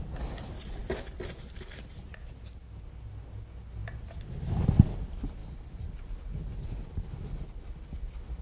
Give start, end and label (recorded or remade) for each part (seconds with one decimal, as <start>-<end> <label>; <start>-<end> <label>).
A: 0.0-0.8 recorded; 0.8-3.1 remade; 3.1-3.8 recorded; 3.8-4.5 remade; 4.5-8.4 recorded